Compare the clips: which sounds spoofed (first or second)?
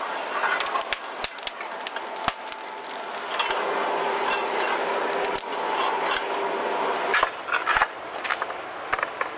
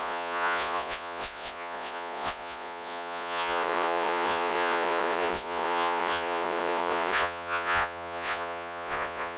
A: second